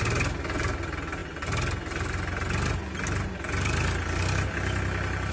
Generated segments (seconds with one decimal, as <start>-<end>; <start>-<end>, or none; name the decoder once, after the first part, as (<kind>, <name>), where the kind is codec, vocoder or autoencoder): none